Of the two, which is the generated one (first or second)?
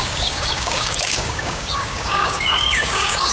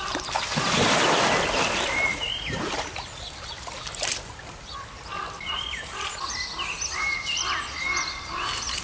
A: first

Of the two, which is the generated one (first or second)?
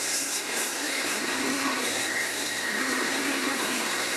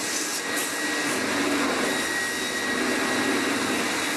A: first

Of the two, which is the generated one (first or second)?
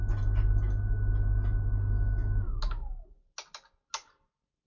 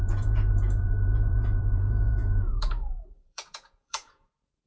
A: second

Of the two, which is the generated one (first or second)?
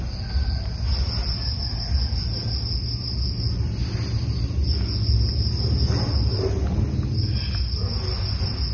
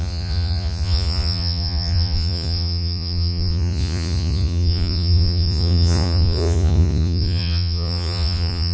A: second